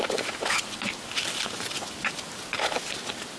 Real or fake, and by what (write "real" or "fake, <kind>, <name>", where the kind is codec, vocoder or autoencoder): real